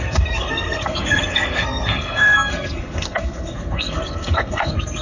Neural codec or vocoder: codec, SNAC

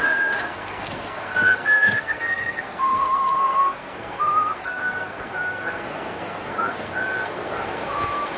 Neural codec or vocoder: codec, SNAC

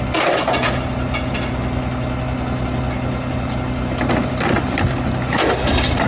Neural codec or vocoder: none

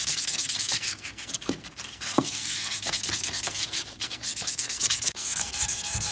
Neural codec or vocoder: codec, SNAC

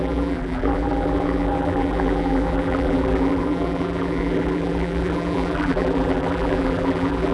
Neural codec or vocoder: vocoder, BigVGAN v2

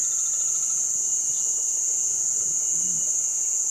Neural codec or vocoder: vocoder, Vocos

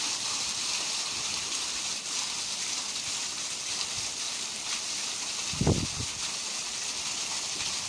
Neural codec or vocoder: none